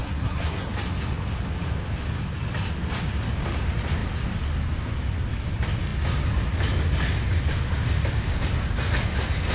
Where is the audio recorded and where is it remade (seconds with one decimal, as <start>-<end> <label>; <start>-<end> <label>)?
0.0-0.7 remade; 0.7-9.5 recorded